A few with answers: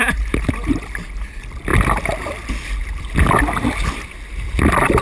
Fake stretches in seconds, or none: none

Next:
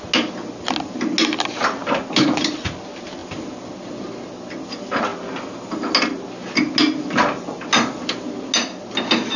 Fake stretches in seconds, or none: none

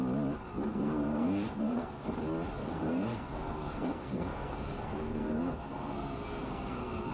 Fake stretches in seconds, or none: 0.7-2.1 (codec, SNAC); 2.6-7.1

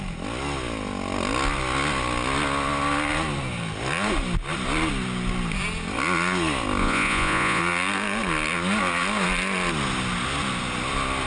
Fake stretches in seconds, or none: 6.8-7.6 (vocoder, Vocos)

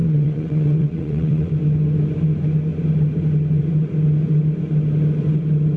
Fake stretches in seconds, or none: 0.0-1.5 (vocoder, WaveNeXt)

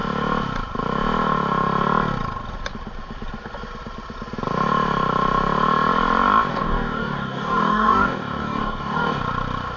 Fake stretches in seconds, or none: 6.5-9.2 (codec, DAC)